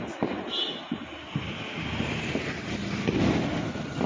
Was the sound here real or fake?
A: real